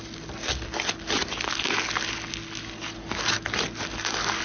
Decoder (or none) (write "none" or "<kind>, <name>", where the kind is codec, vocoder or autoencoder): none